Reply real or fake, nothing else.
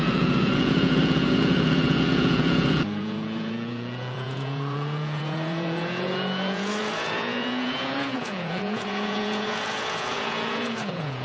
fake